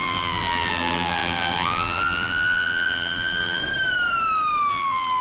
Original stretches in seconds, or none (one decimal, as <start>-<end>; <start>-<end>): 3.6-4.7